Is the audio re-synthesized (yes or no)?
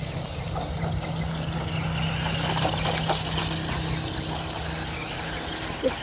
no